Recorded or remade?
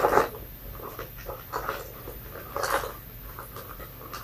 recorded